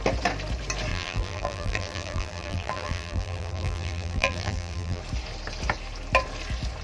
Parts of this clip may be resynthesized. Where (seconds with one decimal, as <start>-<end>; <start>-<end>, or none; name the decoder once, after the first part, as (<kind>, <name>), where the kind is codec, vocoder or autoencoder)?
0.9-5.0 (vocoder, BigVGAN v2)